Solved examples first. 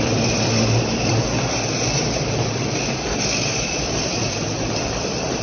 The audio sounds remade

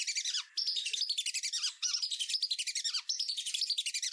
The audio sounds recorded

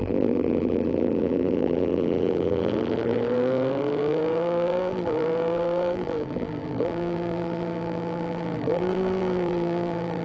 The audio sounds remade